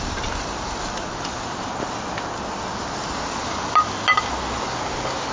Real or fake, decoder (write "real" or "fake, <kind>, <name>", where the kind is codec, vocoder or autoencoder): real